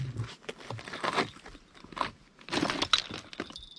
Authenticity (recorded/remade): recorded